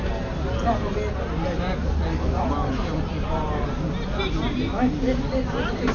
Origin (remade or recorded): recorded